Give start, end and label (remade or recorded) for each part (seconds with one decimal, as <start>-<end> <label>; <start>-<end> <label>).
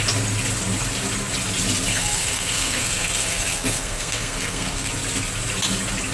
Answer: 0.0-1.9 recorded; 1.9-4.9 remade; 4.9-6.1 recorded